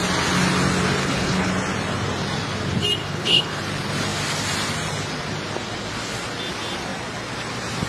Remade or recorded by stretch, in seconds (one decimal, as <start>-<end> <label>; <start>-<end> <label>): 0.0-1.0 recorded; 1.0-1.5 remade; 1.5-3.0 recorded; 3.0-3.6 remade; 3.6-7.9 recorded